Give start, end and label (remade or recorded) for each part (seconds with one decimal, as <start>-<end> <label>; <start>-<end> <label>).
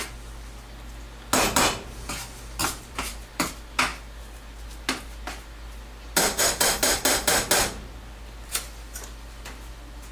0.0-2.6 recorded; 2.6-3.5 remade; 3.5-10.1 recorded